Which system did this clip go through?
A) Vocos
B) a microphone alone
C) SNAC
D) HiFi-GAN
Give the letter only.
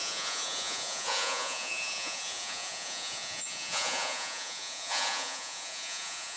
A